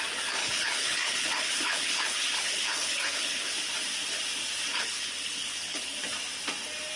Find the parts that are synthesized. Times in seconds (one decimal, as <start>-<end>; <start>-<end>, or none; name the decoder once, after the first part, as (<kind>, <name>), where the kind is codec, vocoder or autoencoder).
0.4-3.5 (codec, HILCodec); 4.7-6.0